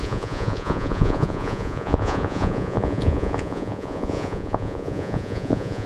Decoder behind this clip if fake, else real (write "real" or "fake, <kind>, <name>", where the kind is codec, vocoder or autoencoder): fake, vocoder, Vocos